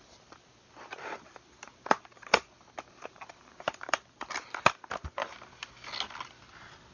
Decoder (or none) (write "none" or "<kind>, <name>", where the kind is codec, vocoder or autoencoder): none